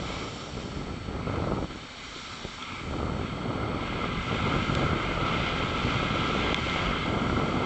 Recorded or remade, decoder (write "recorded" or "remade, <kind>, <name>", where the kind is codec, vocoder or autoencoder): recorded